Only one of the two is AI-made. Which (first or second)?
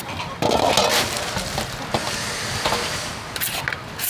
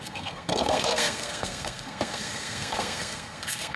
second